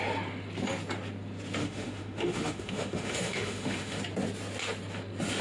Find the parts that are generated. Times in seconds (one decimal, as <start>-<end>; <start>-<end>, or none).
1.6-4.0